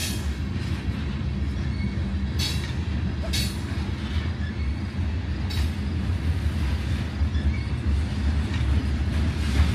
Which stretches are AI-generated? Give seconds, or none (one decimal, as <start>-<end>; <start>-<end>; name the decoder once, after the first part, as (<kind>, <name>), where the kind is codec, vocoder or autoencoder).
none